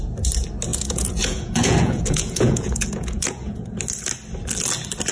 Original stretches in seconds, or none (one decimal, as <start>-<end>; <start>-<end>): 0.0-0.7; 3.8-5.1